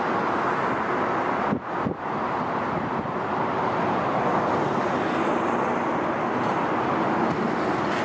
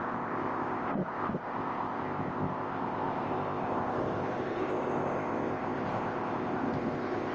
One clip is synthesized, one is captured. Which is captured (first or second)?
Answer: first